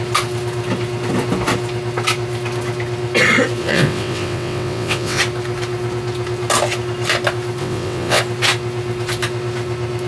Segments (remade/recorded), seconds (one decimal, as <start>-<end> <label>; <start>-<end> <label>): 0.0-3.6 recorded; 3.6-5.2 remade; 5.2-7.6 recorded; 7.6-8.2 remade; 8.2-10.1 recorded